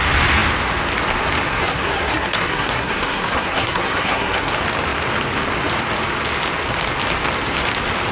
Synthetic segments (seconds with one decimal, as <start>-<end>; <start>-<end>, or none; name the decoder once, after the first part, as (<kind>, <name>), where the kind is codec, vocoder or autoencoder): 1.5-4.5 (codec, SNAC)